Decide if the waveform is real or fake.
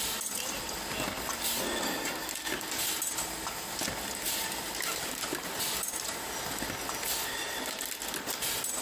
real